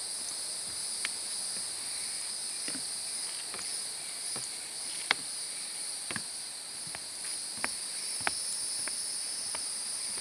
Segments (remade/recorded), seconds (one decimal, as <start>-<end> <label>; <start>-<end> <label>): 0.0-3.7 recorded; 3.7-6.1 remade; 6.1-10.2 recorded